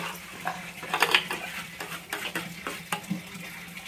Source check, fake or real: real